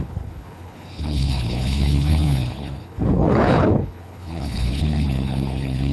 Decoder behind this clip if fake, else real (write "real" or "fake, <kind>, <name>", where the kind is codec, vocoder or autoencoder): fake, codec, HILCodec